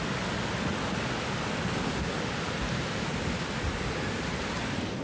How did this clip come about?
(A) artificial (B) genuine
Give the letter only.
B